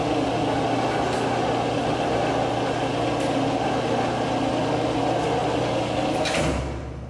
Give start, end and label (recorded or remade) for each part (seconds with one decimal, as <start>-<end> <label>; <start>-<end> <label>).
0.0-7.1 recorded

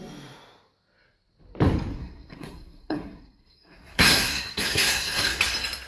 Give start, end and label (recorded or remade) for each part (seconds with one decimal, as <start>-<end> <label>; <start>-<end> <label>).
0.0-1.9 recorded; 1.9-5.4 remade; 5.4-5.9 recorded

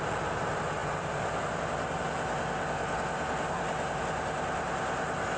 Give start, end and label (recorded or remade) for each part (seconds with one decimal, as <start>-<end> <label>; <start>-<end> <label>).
0.0-5.4 recorded

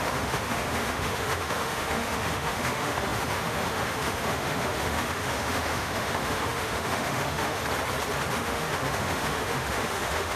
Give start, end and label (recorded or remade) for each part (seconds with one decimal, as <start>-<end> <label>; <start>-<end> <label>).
0.0-7.6 remade; 7.6-8.3 recorded; 8.3-10.4 remade

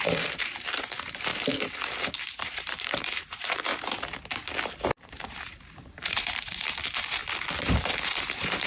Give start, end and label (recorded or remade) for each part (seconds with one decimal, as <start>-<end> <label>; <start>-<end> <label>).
0.0-1.3 remade; 1.3-1.9 recorded; 1.9-3.7 remade; 3.7-4.9 recorded; 4.9-7.2 remade; 7.2-7.8 recorded; 7.8-8.7 remade

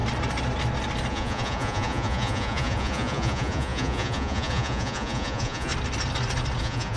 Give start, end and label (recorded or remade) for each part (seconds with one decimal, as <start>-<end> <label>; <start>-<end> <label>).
0.0-1.1 recorded; 1.1-5.7 remade; 5.7-6.6 recorded; 6.6-7.0 remade

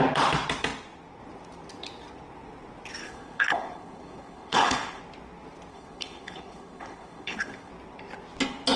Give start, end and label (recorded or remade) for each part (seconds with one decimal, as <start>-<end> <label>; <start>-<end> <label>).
0.0-3.0 recorded; 3.0-5.0 remade; 5.0-5.7 recorded; 5.7-7.7 remade; 7.7-8.8 recorded